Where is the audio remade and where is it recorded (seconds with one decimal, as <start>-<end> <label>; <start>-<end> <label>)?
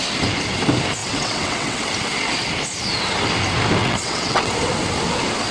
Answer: 0.0-1.0 recorded; 1.0-1.8 remade; 1.8-3.8 recorded; 3.8-4.5 remade; 4.5-5.5 recorded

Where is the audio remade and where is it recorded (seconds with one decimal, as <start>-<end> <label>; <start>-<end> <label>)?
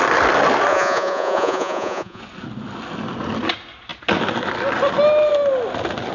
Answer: 0.0-0.7 recorded; 0.7-2.2 remade; 2.2-6.1 recorded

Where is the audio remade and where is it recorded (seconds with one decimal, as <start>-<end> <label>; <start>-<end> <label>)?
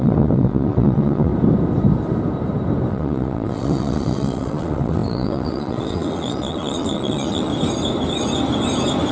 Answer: 0.0-1.3 remade; 1.3-2.9 recorded; 2.9-7.5 remade; 7.5-9.1 recorded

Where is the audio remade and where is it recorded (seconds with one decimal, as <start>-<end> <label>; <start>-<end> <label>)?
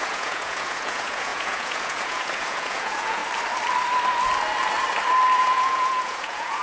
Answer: 0.0-3.2 remade; 3.2-5.4 recorded; 5.4-6.6 remade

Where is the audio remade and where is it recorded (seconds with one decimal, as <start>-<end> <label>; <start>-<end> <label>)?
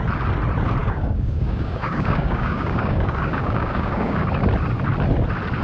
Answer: 0.0-0.8 recorded; 0.8-4.2 remade; 4.2-5.6 recorded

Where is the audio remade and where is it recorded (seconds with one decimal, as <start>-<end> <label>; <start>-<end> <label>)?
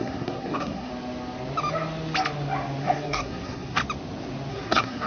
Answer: 0.0-0.9 remade; 0.9-2.8 recorded; 2.8-3.8 remade; 3.8-4.5 recorded; 4.5-5.1 remade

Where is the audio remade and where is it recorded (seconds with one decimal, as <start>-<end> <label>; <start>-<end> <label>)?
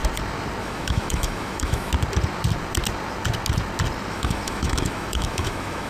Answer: 0.0-0.6 recorded; 0.6-1.9 remade; 1.9-4.1 recorded; 4.1-5.9 remade